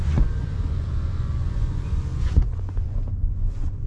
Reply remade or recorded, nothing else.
remade